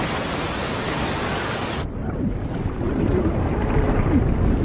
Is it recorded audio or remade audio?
recorded